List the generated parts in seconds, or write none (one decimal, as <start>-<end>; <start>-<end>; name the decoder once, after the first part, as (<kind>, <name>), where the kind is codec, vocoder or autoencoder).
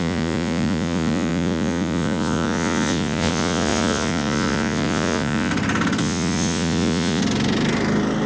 0.0-5.5 (vocoder, Vocos); 6.0-7.2